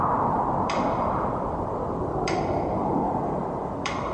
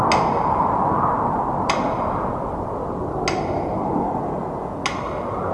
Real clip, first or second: second